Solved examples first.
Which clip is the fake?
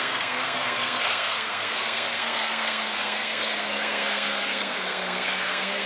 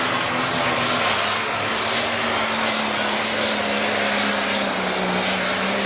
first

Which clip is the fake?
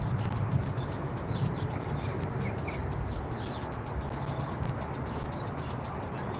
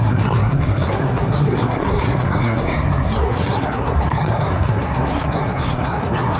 second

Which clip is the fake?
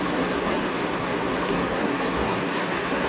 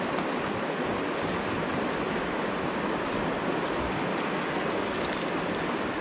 first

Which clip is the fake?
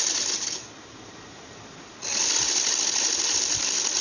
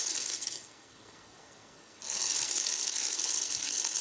second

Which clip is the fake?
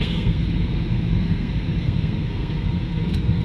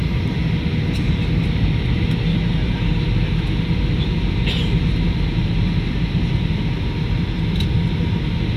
first